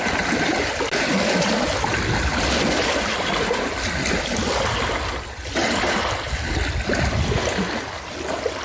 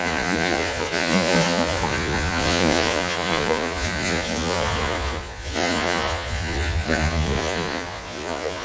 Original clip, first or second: first